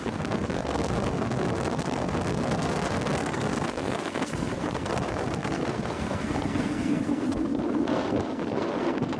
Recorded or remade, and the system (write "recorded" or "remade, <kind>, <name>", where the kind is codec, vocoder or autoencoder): remade, codec, SNAC